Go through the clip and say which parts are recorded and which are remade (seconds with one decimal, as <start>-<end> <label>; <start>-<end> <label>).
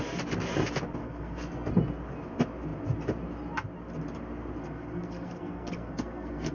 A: 0.0-1.0 recorded; 1.0-1.7 remade; 1.7-4.6 recorded; 4.6-6.5 remade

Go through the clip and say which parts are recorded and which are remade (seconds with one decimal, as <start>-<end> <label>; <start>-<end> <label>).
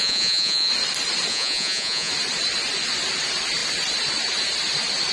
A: 0.0-0.7 remade; 0.7-1.3 recorded; 1.3-2.1 remade; 2.1-5.1 recorded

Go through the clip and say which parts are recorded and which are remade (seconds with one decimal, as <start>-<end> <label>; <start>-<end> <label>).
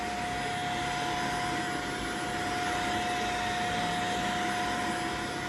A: 0.0-5.5 recorded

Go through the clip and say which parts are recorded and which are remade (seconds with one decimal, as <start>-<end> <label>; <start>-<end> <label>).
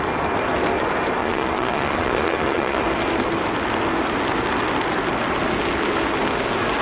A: 0.0-1.2 recorded; 1.2-2.8 remade; 2.8-6.8 recorded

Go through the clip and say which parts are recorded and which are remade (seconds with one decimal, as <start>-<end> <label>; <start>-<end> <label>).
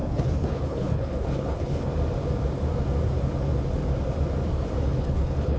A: 0.0-1.9 remade; 1.9-5.0 recorded; 5.0-5.6 remade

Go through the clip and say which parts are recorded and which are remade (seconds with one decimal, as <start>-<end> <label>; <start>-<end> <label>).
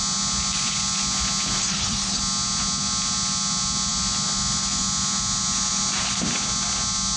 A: 0.0-1.6 recorded; 1.6-2.2 remade; 2.2-7.2 recorded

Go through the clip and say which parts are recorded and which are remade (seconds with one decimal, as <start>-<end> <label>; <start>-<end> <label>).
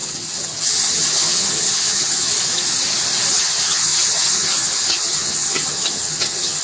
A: 0.0-2.3 remade; 2.3-3.3 recorded; 3.3-6.6 remade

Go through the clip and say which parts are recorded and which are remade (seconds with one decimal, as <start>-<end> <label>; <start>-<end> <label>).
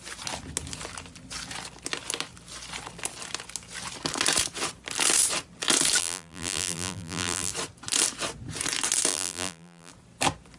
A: 0.0-6.0 recorded; 6.0-7.5 remade; 7.5-9.1 recorded; 9.1-9.9 remade; 9.9-10.6 recorded